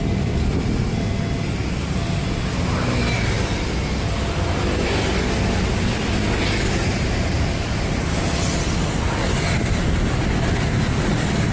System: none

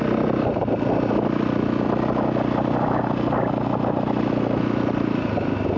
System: none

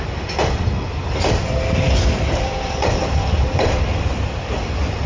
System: none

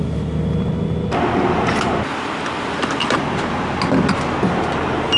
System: none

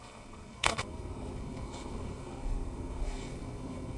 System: codec, SNAC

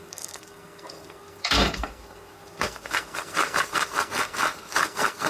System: codec, SNAC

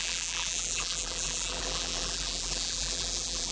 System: vocoder, BigVGAN v2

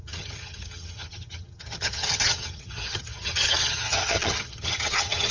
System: vocoder, HiFi-GAN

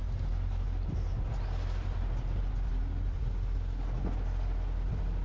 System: none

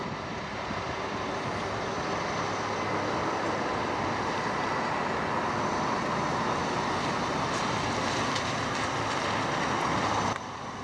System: none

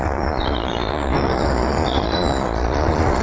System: vocoder, Vocos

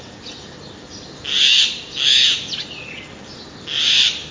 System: none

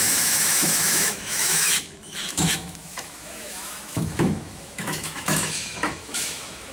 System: autoencoder, DAC-VAE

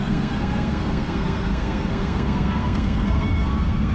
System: codec, SNAC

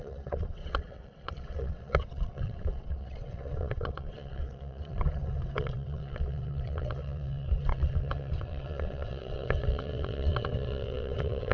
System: vocoder, WaveNeXt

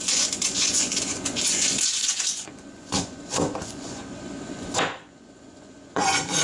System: vocoder, Vocos